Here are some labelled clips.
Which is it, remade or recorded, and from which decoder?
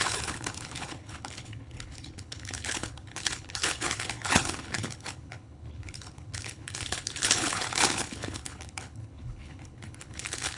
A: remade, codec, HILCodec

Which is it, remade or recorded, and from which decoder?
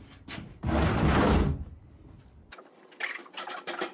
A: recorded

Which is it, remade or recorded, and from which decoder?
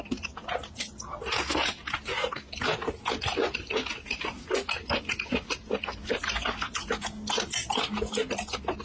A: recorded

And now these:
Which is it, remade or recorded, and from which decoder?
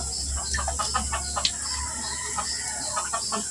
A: recorded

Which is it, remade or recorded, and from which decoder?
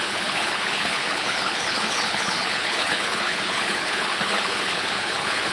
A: remade, codec, HILCodec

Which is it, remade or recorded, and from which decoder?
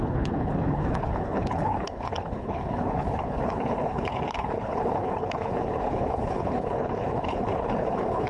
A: remade, codec, HILCodec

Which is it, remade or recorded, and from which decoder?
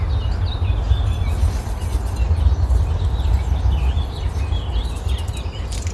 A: recorded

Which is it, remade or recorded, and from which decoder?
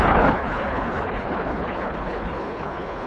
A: remade, codec, HILCodec